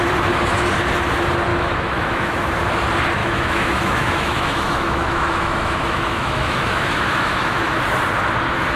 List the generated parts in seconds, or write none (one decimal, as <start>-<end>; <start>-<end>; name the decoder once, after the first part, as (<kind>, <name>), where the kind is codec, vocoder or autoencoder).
1.5-2.5 (autoencoder, DAC-VAE); 3.2-7.8